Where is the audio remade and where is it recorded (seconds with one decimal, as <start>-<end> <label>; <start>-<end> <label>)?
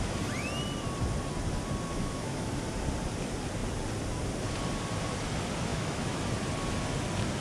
0.0-1.9 recorded; 1.9-2.5 remade; 2.5-5.7 recorded; 5.7-6.2 remade; 6.2-7.4 recorded